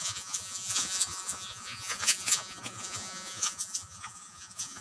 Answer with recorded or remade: remade